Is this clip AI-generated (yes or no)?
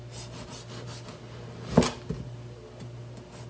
no